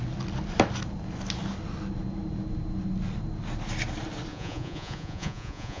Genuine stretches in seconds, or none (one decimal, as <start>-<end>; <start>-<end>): 0.0-4.3